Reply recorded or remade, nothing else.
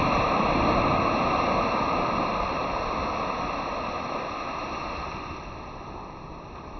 recorded